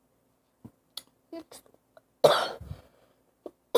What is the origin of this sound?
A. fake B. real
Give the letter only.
B